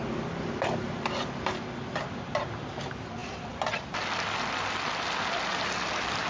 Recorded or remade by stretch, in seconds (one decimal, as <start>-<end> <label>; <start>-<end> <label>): 0.0-6.3 recorded